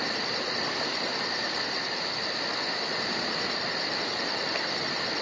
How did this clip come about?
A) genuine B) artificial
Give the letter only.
A